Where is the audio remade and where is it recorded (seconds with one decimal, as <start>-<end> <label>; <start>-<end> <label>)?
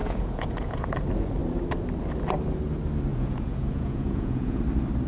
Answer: 0.0-0.9 remade; 0.9-3.1 recorded; 3.1-4.6 remade; 4.6-5.1 recorded